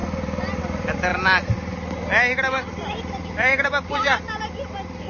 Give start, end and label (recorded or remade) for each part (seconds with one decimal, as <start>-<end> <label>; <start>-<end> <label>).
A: 0.0-1.1 remade; 1.1-2.9 recorded; 2.9-5.1 remade